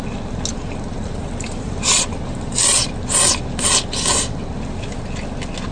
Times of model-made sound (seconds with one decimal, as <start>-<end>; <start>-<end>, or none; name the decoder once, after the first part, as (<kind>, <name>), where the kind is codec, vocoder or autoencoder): 0.9-2.0 (vocoder, BigVGAN v2)